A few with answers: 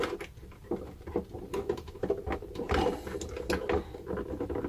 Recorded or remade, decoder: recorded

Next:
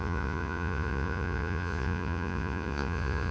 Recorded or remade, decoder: remade, vocoder, Vocos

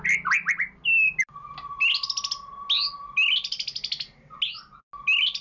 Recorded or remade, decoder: recorded